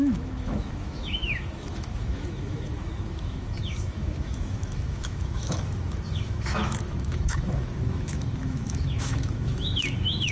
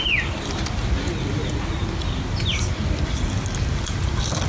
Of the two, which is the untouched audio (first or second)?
second